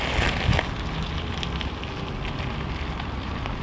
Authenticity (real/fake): real